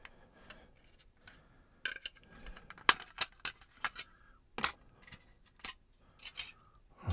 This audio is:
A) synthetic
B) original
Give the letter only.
B